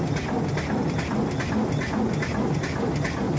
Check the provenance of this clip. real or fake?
real